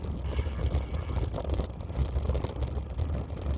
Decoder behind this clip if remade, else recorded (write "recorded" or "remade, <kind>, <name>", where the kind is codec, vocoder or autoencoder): recorded